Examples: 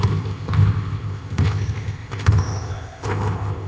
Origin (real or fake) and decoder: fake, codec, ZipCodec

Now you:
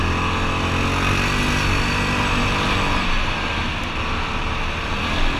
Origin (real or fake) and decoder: real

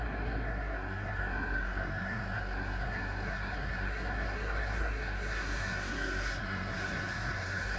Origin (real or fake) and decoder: fake, codec, SNAC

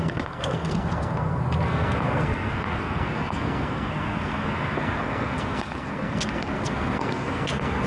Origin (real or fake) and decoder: fake, codec, SNAC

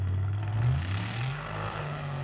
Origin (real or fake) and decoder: fake, codec, SNAC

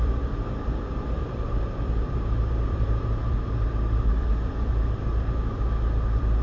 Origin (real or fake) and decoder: fake, vocoder, BigVGAN v2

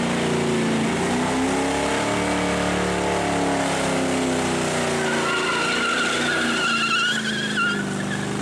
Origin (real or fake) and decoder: real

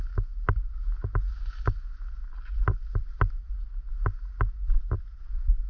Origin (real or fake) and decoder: real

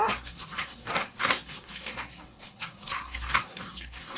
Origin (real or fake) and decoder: fake, codec, SNAC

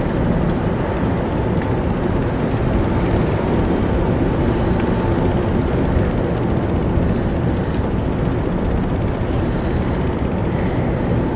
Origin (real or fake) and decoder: real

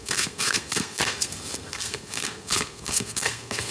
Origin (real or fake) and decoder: fake, codec, SNAC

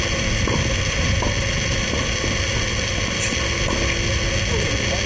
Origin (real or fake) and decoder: real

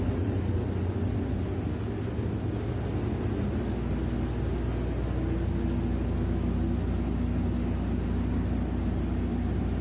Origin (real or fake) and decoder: real